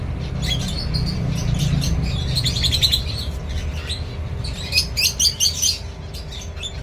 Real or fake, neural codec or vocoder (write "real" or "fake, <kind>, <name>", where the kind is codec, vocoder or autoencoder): real